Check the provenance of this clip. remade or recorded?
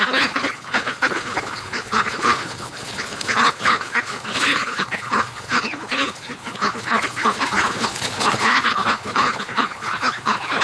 remade